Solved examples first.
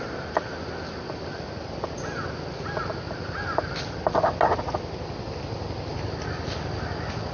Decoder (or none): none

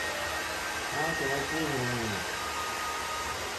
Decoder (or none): none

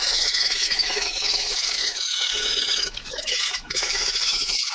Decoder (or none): autoencoder, DAC-VAE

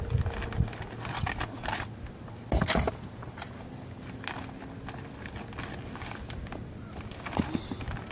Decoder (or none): none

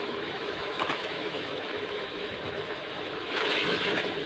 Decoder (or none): autoencoder, DAC-VAE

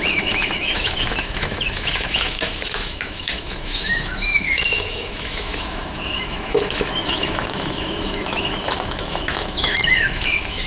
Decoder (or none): autoencoder, DAC-VAE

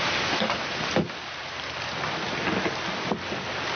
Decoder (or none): none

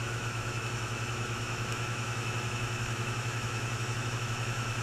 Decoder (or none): autoencoder, DAC-VAE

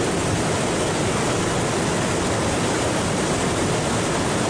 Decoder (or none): none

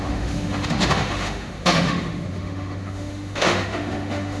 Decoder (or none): autoencoder, DAC-VAE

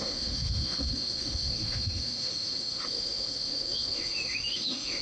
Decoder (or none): autoencoder, DAC-VAE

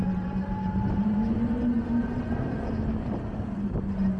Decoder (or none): none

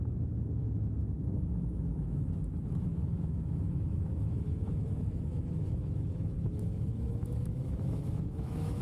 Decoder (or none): autoencoder, DAC-VAE